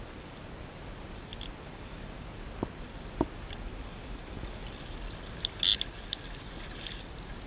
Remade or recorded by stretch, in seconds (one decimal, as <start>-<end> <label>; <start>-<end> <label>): 0.0-7.5 recorded